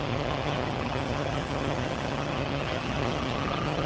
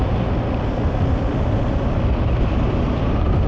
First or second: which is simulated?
first